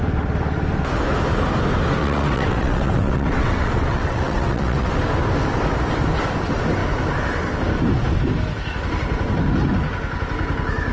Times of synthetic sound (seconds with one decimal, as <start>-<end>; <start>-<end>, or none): 2.0-4.9